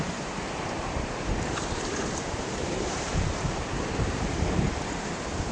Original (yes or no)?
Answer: no